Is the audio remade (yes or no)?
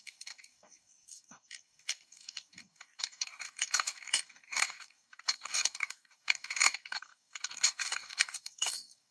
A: yes